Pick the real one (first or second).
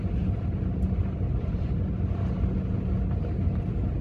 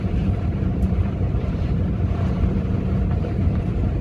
first